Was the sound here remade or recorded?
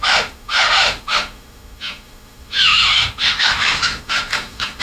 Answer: remade